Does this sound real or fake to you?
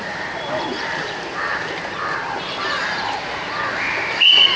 fake